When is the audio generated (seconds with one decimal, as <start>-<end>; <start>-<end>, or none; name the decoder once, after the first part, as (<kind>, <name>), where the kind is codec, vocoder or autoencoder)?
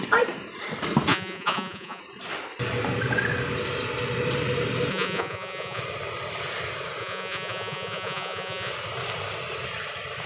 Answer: 1.1-2.0 (vocoder, Vocos); 4.9-5.8; 7.0-8.7